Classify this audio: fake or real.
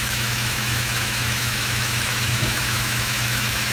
fake